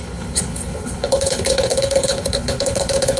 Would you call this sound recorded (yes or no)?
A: no